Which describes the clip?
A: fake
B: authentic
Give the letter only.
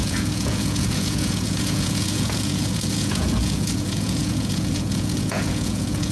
A